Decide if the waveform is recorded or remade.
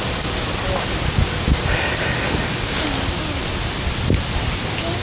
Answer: recorded